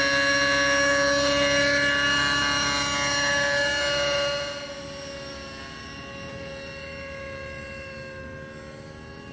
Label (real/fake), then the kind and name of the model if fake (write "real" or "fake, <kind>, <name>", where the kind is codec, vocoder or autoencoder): real